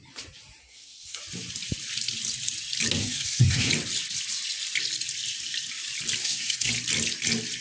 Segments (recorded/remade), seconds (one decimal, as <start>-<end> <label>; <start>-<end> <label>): 0.0-0.6 recorded; 0.6-1.2 remade; 1.2-3.0 recorded; 3.0-3.7 remade; 3.7-6.2 recorded; 6.2-6.7 remade; 6.7-7.6 recorded